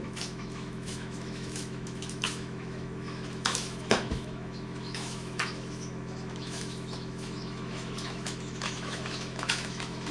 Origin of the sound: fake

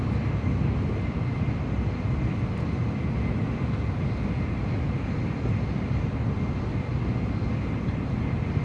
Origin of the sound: real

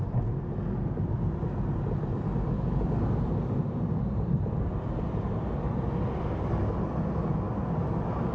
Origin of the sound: real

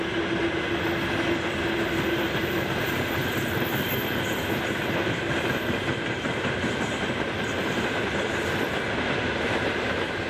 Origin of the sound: real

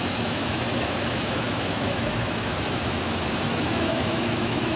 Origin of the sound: fake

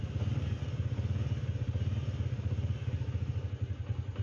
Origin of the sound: real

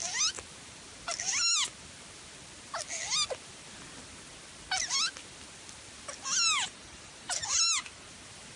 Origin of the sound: real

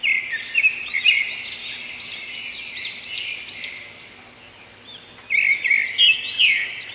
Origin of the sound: real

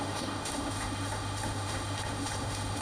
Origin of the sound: fake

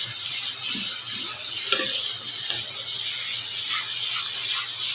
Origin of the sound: real